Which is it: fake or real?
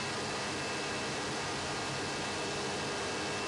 real